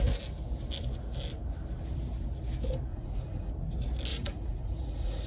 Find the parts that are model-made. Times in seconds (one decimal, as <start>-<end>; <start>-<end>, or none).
2.9-3.5; 4.1-5.3